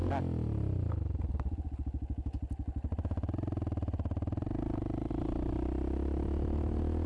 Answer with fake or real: real